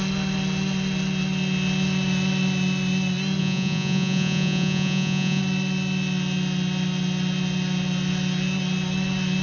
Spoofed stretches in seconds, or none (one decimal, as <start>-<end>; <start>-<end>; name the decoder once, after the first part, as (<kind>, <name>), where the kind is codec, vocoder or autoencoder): 3.4-5.4 (vocoder, Vocos)